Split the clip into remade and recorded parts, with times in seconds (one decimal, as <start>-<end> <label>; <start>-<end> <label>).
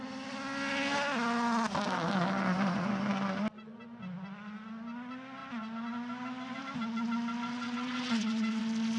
0.0-7.5 recorded; 7.5-8.6 remade; 8.6-9.0 recorded